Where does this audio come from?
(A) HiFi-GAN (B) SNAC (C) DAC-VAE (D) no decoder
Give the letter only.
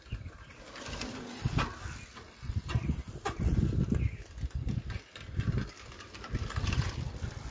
D